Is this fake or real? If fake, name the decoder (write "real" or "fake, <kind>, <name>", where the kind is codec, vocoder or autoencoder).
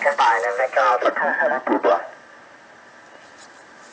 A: real